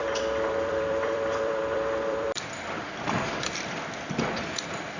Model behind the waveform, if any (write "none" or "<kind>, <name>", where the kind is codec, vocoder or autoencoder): vocoder, BigVGAN v2